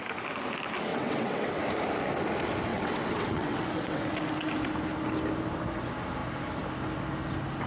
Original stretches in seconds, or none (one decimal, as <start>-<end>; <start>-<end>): 0.0-0.9; 1.6-2.7; 4.0-7.7